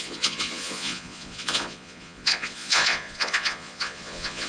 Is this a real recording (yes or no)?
no